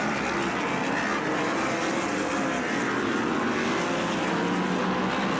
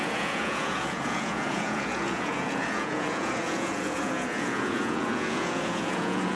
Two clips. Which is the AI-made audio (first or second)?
second